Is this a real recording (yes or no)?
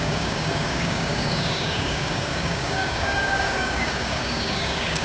no